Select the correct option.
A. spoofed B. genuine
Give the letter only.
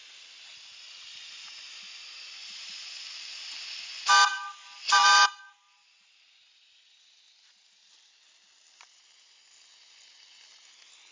B